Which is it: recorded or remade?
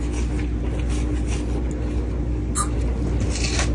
recorded